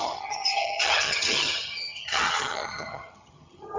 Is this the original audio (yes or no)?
no